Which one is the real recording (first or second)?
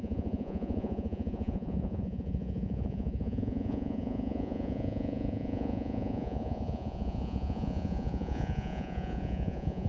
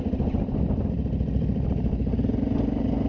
second